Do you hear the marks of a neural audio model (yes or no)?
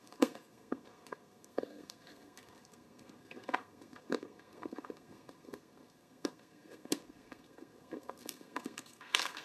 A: yes